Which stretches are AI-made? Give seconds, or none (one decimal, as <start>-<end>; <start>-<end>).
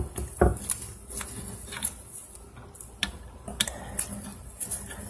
3.0-3.8; 4.3-5.1